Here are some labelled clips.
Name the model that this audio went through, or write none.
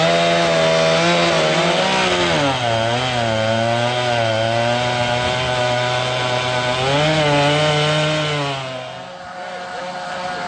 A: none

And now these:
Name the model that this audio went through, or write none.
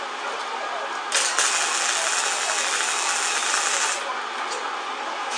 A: none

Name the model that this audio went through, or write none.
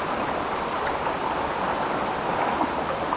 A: none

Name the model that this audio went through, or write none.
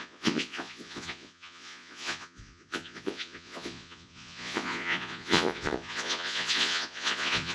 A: vocoder, Vocos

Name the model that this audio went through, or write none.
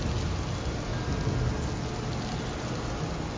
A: none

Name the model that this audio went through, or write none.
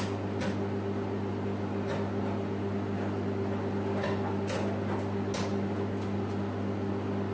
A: none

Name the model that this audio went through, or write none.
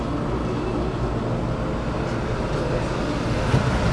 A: none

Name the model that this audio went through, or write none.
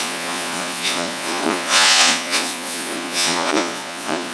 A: vocoder, Vocos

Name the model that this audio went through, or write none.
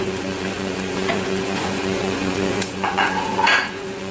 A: vocoder, Vocos